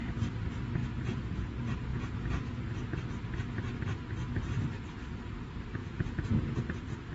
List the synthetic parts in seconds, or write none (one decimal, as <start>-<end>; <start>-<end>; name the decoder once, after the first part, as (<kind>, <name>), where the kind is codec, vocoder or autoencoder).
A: 0.8-1.5 (vocoder, Vocos); 1.9-2.5; 5.8-6.6